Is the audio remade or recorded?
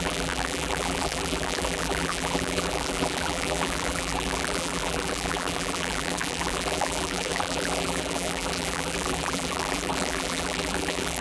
remade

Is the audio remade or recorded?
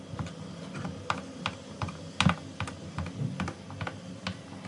recorded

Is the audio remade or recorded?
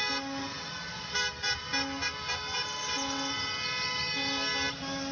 recorded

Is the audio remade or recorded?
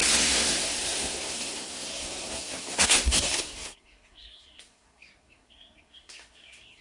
remade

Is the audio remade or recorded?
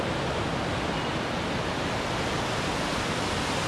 recorded